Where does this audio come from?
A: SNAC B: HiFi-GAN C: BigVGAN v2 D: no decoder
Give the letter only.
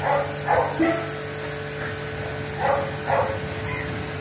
D